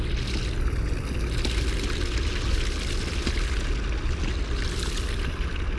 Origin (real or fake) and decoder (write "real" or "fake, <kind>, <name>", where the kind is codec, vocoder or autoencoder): real